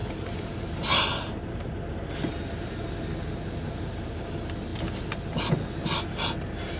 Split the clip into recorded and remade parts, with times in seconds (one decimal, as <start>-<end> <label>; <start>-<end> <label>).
0.0-1.7 remade; 1.7-6.8 recorded